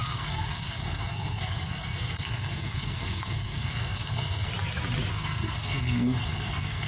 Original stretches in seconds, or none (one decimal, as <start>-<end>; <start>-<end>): 4.5-5.1